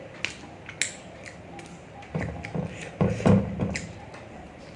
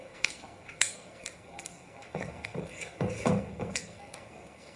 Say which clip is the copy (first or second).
second